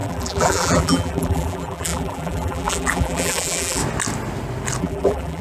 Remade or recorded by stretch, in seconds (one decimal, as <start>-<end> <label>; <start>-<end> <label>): 0.0-3.8 remade; 3.8-4.8 recorded; 4.8-5.4 remade